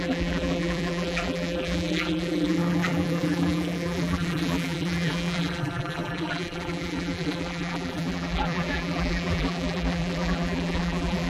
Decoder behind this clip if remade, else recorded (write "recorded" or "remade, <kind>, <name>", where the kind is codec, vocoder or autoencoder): remade, vocoder, BigVGAN v2